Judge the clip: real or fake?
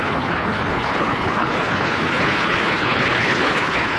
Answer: fake